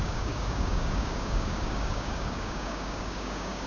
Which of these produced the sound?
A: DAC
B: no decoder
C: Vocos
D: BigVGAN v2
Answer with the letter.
A